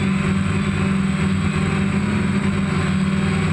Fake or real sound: real